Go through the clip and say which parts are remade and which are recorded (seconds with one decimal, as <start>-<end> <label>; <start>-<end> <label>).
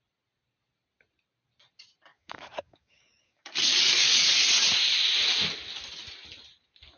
0.0-2.1 recorded; 2.1-4.4 remade; 4.4-7.0 recorded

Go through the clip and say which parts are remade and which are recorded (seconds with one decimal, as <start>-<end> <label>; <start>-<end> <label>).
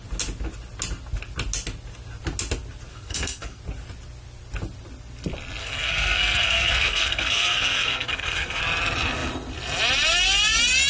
0.0-2.9 recorded; 2.9-3.6 remade; 3.6-5.6 recorded; 5.6-8.6 remade; 8.6-10.9 recorded